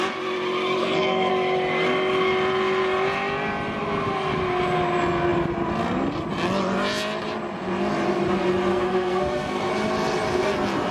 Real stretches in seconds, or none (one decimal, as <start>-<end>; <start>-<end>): 0.0-0.8; 1.3-8.7; 9.7-10.9